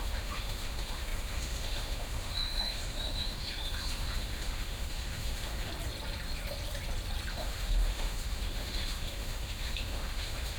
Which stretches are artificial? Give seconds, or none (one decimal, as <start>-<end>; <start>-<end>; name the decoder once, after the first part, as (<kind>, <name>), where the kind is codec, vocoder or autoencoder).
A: 0.0-5.7 (autoencoder, DAC-VAE); 7.3-10.6